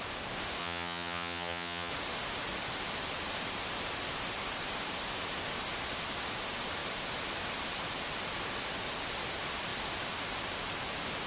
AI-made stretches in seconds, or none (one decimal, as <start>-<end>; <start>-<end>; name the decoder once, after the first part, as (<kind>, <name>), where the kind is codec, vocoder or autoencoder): 0.6-1.9 (vocoder, HiFi-GAN)